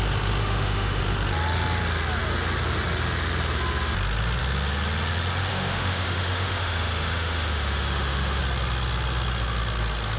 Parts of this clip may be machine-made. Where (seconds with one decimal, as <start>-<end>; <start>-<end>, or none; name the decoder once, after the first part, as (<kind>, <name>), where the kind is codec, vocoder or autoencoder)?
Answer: 0.4-1.0 (autoencoder, DAC-VAE); 5.5-8.4